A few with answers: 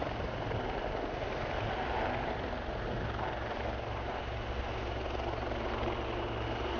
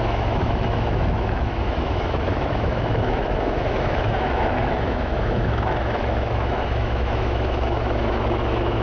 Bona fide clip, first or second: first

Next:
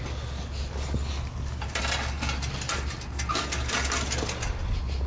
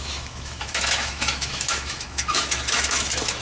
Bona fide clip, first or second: first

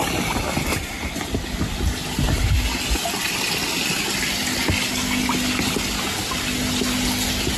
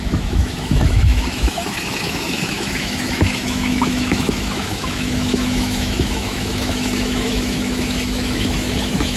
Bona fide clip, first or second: first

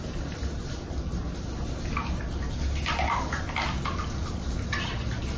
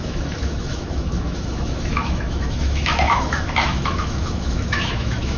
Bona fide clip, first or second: first